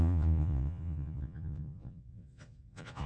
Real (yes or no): no